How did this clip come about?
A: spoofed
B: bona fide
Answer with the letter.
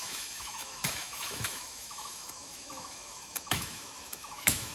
A